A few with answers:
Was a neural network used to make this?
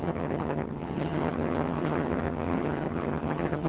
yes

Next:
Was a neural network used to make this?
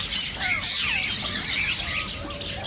no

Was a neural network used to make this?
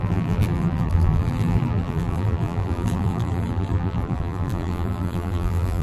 yes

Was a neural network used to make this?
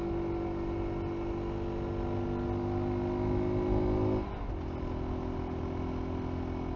no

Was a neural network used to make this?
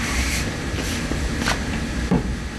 no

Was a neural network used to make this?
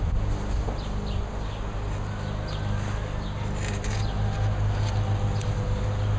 no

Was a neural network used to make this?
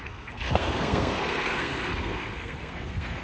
yes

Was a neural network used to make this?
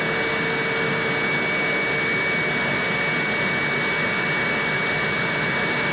no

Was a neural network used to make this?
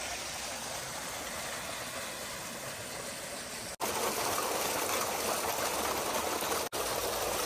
no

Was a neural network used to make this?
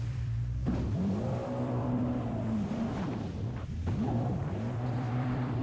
yes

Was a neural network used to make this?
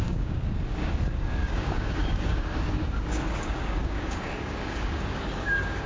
yes